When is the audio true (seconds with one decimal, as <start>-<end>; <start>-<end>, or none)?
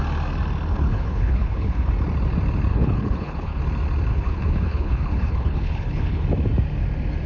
0.0-0.7; 1.9-2.7; 3.6-4.1; 6.2-7.3